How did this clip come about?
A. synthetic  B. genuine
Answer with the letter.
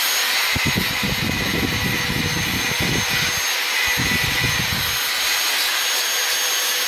B